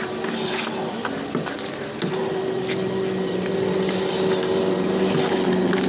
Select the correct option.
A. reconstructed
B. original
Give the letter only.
B